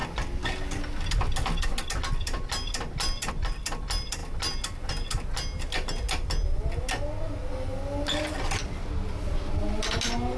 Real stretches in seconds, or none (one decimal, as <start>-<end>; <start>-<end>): 0.0-10.4